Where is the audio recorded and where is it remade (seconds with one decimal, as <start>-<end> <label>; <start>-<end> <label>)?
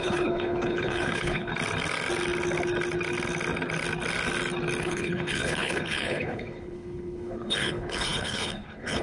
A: 0.0-1.5 remade; 1.5-4.8 recorded; 4.8-9.0 remade